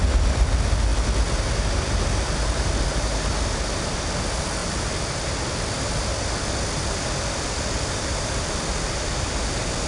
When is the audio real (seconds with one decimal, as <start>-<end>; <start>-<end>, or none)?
0.0-9.9